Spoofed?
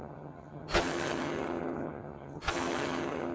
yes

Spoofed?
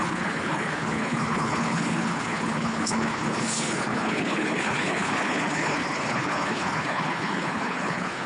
yes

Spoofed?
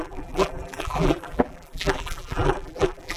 yes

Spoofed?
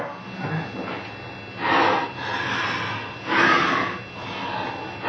no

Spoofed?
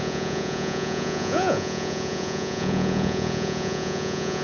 yes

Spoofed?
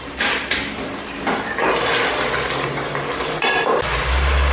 no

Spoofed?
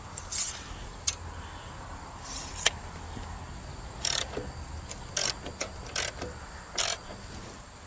no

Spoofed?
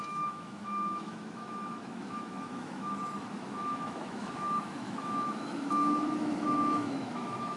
yes